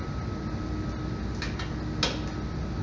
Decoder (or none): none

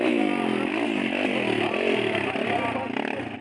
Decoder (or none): none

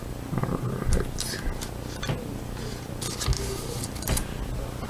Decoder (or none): none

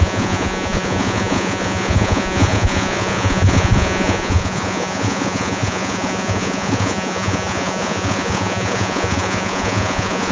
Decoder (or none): vocoder, Vocos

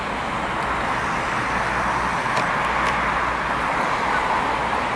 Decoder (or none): none